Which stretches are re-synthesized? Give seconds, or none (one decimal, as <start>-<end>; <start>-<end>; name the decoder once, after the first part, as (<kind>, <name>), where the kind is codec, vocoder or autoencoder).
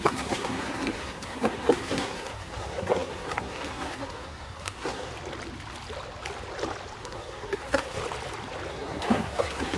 0.0-5.1 (codec, SNAC); 7.0-8.0; 8.7-9.8